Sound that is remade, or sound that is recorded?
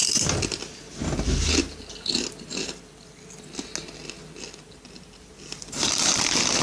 recorded